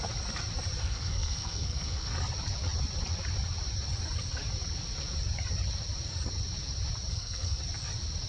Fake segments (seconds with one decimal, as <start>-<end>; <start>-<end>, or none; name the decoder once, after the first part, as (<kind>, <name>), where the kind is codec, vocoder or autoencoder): 0.8-2.1 (codec, SNAC); 7.1-7.6